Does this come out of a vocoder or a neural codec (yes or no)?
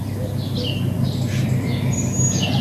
no